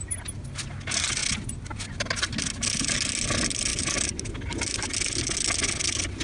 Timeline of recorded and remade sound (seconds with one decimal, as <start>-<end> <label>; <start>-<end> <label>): 0.0-6.2 recorded